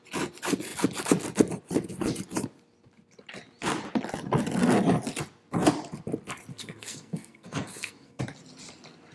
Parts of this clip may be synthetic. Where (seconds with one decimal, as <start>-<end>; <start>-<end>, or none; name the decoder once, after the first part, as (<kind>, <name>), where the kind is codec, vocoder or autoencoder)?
6.5-8.2 (codec, SNAC)